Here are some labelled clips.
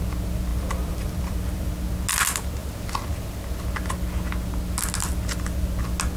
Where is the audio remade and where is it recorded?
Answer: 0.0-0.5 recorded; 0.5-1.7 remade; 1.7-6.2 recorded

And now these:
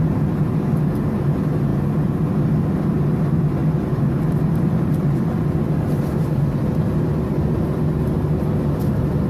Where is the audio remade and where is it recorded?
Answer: 0.0-9.3 recorded

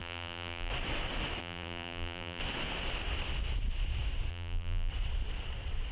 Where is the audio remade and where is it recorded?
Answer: 0.0-0.7 remade; 0.7-1.4 recorded; 1.4-2.4 remade; 2.4-4.3 recorded; 4.3-4.9 remade; 4.9-5.9 recorded

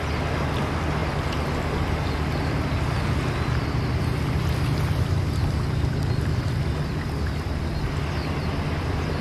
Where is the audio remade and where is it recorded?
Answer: 0.0-9.2 recorded

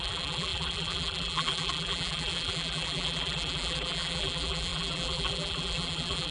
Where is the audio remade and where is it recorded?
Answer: 0.0-6.3 remade

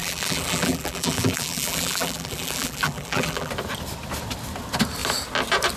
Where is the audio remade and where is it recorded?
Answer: 0.0-3.5 remade; 3.5-5.8 recorded

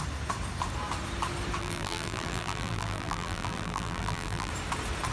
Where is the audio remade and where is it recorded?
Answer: 0.0-1.6 recorded; 1.6-4.5 remade; 4.5-5.1 recorded

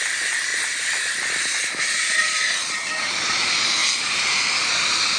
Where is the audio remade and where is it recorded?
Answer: 0.0-3.8 recorded; 3.8-4.6 remade; 4.6-5.2 recorded